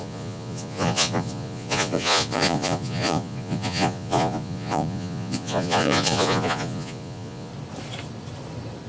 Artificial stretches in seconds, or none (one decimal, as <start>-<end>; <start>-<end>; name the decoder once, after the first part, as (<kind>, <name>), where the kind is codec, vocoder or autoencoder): 0.0-7.5 (vocoder, Vocos)

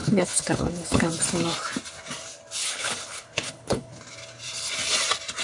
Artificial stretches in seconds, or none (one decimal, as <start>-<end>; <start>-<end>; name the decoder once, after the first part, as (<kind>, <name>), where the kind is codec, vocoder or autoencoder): 0.0-1.1 (codec, HILCodec); 2.6-4.0

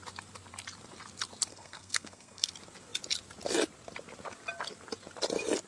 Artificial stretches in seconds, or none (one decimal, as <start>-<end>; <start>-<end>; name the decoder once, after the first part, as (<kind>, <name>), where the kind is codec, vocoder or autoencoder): 1.5-2.5 (codec, SNAC)

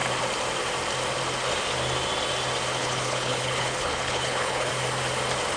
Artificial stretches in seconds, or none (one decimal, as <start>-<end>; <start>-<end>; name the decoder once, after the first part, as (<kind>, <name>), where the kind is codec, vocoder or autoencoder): 2.8-4.7 (codec, HILCodec)

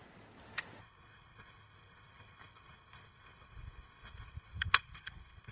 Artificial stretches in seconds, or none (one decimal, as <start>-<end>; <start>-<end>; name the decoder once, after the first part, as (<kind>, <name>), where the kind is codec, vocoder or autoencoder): 0.8-5.5 (codec, HILCodec)

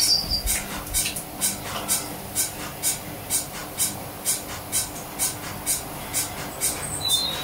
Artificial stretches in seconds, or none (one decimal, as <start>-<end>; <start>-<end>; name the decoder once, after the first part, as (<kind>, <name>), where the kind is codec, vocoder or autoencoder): none

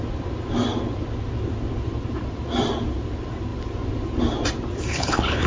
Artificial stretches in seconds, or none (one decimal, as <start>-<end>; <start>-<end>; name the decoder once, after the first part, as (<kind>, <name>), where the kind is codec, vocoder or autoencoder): 4.9-5.5 (codec, HILCodec)